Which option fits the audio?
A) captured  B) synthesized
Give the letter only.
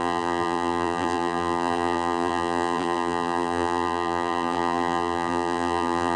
B